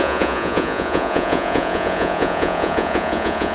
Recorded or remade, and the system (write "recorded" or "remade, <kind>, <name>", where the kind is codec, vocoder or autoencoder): remade, vocoder, Vocos